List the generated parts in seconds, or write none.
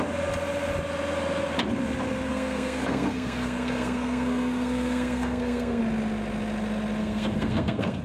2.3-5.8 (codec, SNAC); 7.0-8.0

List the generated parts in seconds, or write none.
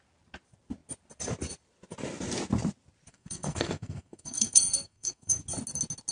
3.1-5.4 (codec, SNAC)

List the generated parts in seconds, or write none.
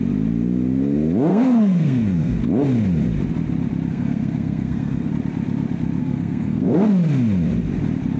1.3-2.4 (codec, SNAC); 3.9-5.1; 6.0-6.9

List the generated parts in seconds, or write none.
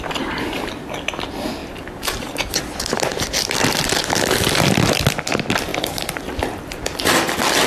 none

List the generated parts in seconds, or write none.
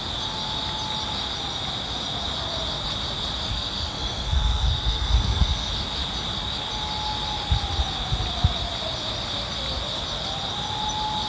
3.5-5.7 (codec, SNAC)